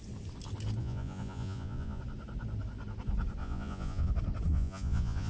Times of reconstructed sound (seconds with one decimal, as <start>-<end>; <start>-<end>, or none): 0.8-2.0; 3.4-4.1; 4.5-5.3